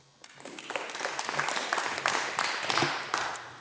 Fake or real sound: real